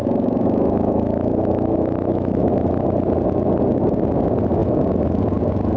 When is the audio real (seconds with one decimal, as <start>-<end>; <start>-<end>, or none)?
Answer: 2.8-4.6; 5.2-5.8